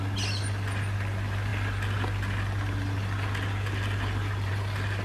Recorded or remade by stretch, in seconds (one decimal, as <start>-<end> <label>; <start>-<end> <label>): 0.0-5.0 recorded